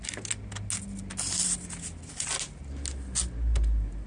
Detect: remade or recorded recorded